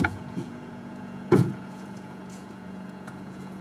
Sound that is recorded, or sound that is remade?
remade